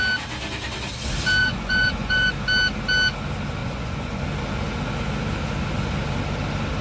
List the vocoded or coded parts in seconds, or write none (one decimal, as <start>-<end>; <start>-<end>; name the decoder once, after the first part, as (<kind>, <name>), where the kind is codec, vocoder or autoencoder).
1.4-2.3 (vocoder, Vocos); 3.6-4.2